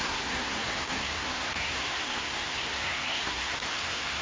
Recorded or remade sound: remade